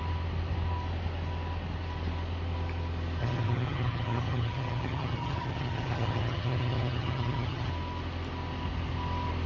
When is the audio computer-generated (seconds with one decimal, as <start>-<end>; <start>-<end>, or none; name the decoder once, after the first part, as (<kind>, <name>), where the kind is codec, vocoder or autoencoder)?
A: 3.2-7.7 (vocoder, HiFi-GAN)